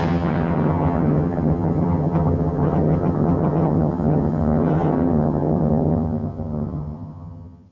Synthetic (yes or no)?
yes